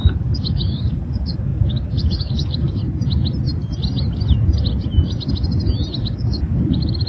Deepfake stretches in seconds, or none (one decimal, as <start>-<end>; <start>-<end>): 0.0-2.8; 6.0-7.1